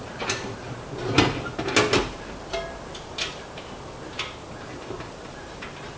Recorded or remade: recorded